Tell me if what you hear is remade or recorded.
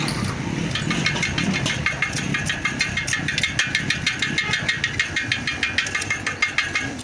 recorded